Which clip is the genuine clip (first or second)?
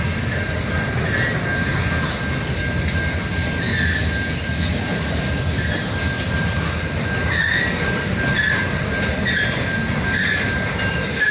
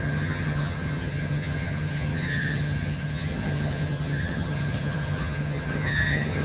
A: first